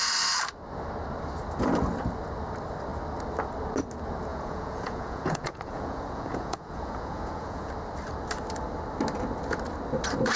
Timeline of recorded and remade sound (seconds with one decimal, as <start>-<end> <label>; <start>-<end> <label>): 0.0-4.3 recorded; 4.3-7.7 remade; 7.7-10.4 recorded